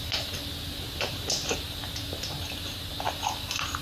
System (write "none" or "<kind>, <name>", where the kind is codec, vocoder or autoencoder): none